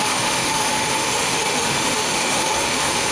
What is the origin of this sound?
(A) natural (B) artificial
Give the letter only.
B